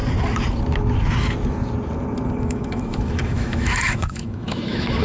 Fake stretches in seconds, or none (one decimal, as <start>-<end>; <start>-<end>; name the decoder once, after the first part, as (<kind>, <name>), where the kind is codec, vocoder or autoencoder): 2.4-5.0 (autoencoder, DAC-VAE)